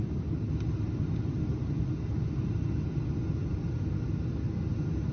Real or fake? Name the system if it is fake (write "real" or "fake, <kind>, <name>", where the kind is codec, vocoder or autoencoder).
real